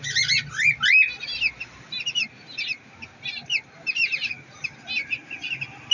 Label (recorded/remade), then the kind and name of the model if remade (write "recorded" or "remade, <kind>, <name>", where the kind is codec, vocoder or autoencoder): recorded